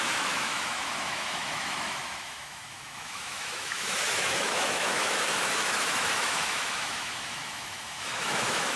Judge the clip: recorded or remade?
remade